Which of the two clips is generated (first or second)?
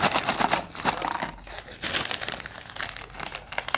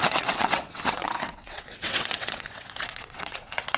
second